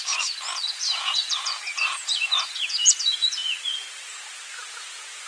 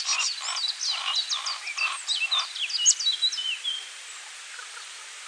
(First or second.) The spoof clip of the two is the first